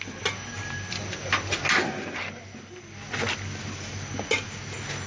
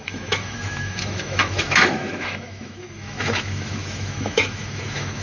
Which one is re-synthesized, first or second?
second